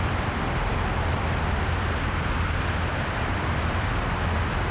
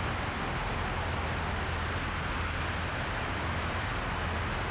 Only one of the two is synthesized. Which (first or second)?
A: first